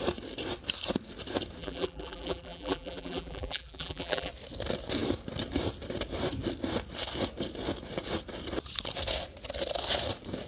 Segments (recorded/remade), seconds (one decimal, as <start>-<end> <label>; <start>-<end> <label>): 0.0-1.6 recorded; 1.6-4.3 remade; 4.3-10.5 recorded